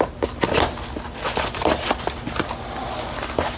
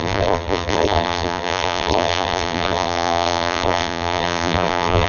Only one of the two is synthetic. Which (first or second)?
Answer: second